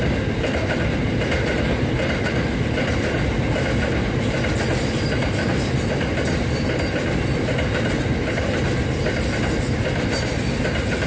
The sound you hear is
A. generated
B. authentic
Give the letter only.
B